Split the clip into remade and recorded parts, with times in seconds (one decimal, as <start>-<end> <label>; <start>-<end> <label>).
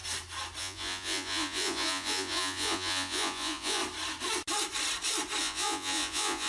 0.0-0.6 recorded; 0.6-3.8 remade; 3.8-5.4 recorded; 5.4-6.5 remade